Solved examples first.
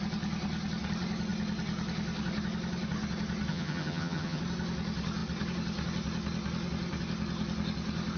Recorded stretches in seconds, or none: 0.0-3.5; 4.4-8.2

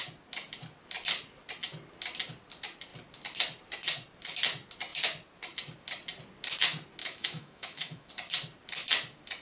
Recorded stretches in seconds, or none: 0.0-7.0; 8.1-9.4

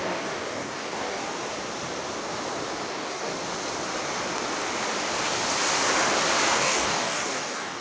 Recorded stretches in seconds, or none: 1.2-2.9; 3.3-6.5

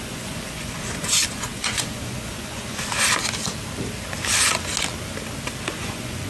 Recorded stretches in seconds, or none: 2.9-5.7

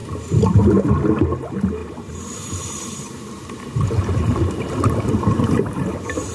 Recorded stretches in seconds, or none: 0.9-1.8; 4.5-6.3

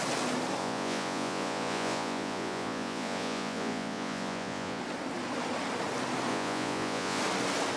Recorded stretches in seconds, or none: 0.0-0.6; 4.8-6.3; 7.2-7.8

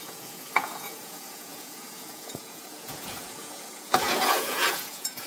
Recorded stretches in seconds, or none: none

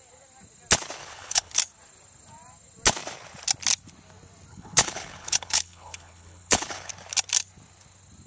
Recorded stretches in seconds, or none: 0.0-1.0; 1.6-4.5; 6.9-8.3